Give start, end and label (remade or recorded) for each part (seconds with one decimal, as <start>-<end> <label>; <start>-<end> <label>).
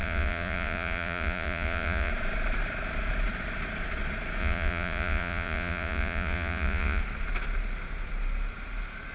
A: 0.0-2.1 remade; 2.1-4.4 recorded; 4.4-7.0 remade; 7.0-9.1 recorded